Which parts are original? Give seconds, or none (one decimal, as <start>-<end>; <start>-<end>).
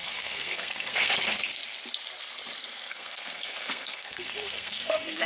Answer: 1.1-2.6